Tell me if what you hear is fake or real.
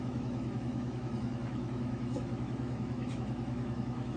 fake